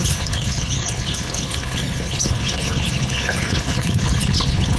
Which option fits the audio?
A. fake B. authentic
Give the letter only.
A